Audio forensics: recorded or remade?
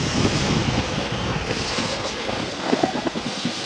remade